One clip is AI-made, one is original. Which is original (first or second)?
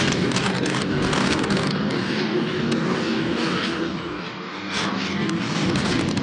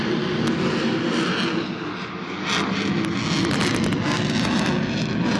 second